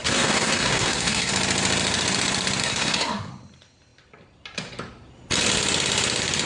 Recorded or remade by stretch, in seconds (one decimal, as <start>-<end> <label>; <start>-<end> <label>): 0.0-1.3 remade; 1.3-2.6 recorded; 2.6-3.3 remade; 3.3-6.5 recorded